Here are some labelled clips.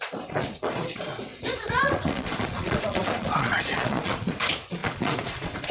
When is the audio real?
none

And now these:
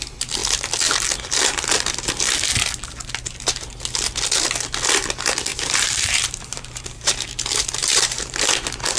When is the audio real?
0.0-5.5; 7.1-7.8; 8.5-9.0

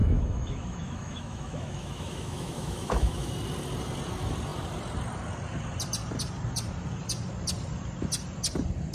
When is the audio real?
3.3-8.9

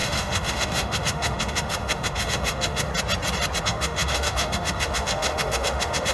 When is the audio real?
2.9-3.6

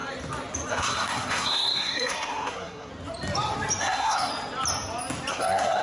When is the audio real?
0.0-0.7; 2.9-3.8; 4.3-5.3

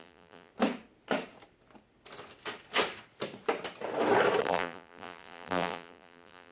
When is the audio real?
0.5-4.4